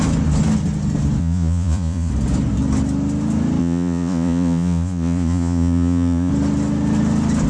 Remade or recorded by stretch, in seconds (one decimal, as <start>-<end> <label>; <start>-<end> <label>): 0.0-1.2 recorded; 1.2-2.1 remade; 2.1-3.6 recorded; 3.6-6.3 remade; 6.3-7.5 recorded